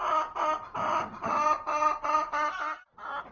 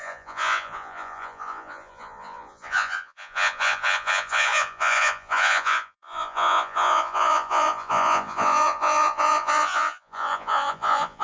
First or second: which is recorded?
first